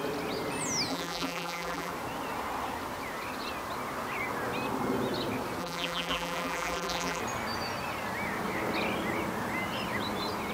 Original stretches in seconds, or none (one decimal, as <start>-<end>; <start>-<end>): 0.0-0.9; 1.9-5.6; 7.2-10.5